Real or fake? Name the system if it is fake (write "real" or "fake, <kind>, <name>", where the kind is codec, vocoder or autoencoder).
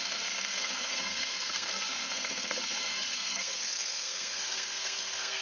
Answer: fake, codec, SNAC